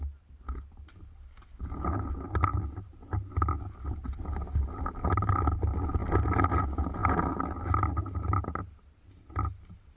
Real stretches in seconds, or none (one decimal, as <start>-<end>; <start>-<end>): 0.0-10.0